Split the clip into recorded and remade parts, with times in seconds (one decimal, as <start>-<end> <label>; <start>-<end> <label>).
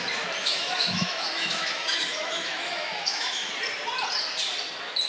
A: 0.0-0.4 recorded; 0.4-3.5 remade; 3.5-5.1 recorded